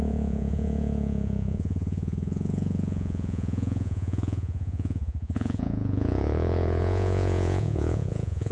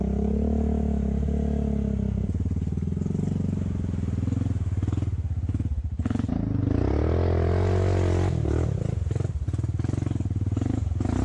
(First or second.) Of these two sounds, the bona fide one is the second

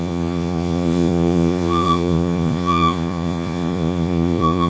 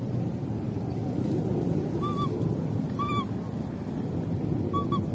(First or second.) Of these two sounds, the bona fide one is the second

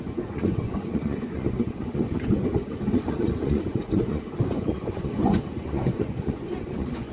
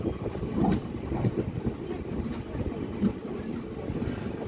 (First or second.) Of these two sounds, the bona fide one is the second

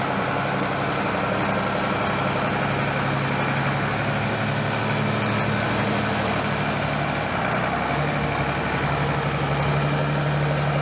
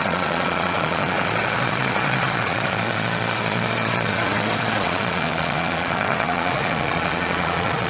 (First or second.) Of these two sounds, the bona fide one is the first